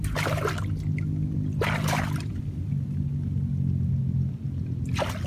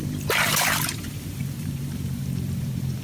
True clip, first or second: first